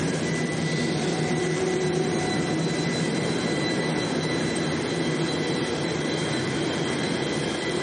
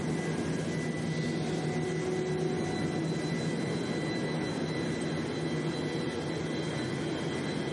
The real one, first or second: second